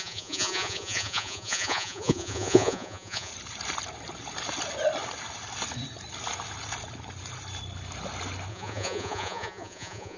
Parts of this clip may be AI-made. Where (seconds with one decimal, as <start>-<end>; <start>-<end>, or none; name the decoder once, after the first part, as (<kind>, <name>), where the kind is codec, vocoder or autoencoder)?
0.0-3.3 (vocoder, Vocos); 8.5-10.2